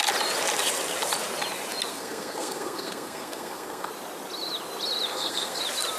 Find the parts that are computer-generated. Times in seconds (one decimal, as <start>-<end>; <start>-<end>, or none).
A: 1.9-3.9; 5.1-5.6

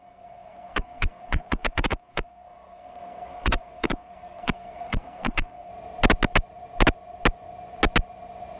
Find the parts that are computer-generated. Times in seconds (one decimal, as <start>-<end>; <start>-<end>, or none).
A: 0.0-5.7

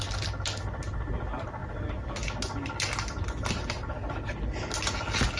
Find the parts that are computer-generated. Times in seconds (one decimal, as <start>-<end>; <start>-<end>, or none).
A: none

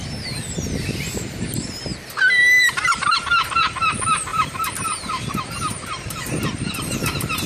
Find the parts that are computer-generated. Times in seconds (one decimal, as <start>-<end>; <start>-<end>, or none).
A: 1.0-1.9; 2.4-7.5

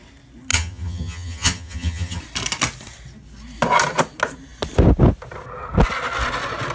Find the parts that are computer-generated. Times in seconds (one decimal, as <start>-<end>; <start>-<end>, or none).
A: 0.5-2.2

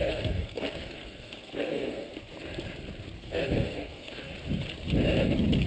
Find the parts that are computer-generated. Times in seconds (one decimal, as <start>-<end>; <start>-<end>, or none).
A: 0.0-2.1; 3.2-4.3